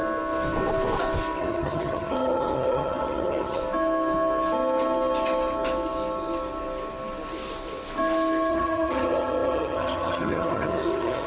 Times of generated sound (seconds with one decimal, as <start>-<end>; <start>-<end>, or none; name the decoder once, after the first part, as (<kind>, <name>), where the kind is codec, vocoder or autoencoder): 1.4-3.6 (vocoder, HiFi-GAN); 8.5-11.3